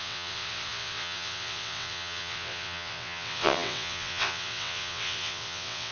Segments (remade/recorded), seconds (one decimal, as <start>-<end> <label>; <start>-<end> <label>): 0.0-5.9 remade